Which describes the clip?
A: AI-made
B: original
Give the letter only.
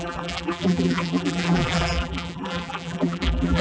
A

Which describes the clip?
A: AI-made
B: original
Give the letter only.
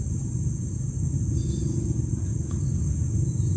B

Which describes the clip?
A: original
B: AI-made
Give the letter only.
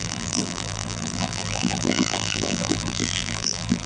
B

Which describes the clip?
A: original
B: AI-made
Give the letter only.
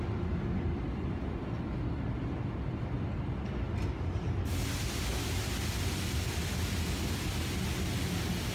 A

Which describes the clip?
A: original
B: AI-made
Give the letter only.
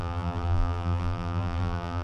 B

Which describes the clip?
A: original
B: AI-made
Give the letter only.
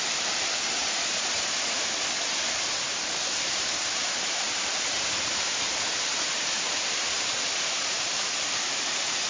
B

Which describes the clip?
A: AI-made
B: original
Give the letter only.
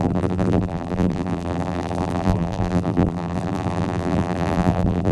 A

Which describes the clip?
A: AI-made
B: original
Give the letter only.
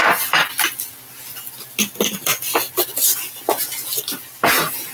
B